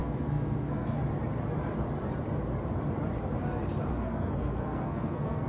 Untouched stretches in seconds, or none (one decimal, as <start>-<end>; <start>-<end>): 1.0-3.9